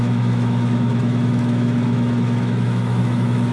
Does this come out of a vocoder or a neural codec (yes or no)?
yes